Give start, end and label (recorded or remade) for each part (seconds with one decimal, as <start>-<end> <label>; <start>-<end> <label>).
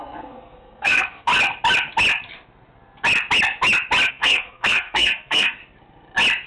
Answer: 0.0-1.3 remade; 1.3-4.1 recorded; 4.1-5.6 remade; 5.6-6.5 recorded